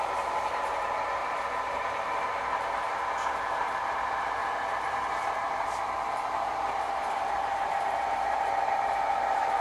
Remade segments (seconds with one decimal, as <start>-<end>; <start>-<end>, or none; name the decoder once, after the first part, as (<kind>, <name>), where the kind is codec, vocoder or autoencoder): 0.0-9.6 (vocoder, BigVGAN v2)